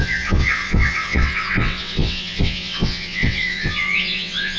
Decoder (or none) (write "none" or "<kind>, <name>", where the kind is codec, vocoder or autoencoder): vocoder, WaveNeXt